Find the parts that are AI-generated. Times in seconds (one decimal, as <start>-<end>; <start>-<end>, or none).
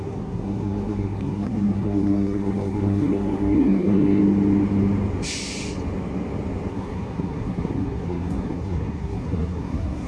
0.0-4.2; 6.7-10.1